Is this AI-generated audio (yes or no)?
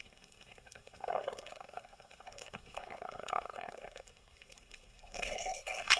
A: yes